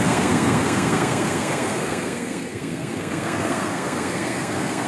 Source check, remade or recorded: remade